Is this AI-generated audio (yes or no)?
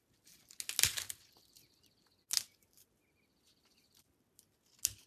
no